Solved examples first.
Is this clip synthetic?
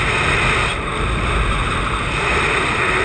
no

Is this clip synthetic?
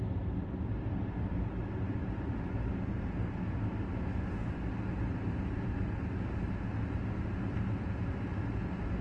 no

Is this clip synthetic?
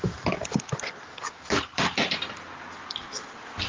no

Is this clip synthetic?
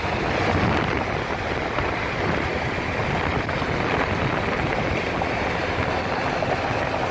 no